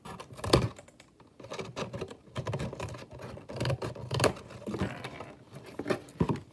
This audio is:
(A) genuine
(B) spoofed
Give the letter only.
A